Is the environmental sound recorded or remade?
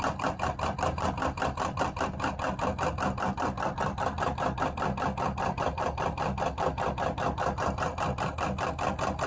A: recorded